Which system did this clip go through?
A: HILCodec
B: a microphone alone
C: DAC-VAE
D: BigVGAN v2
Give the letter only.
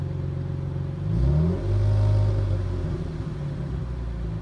B